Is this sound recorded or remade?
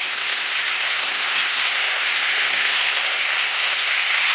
remade